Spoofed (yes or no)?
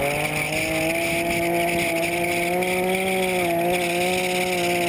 no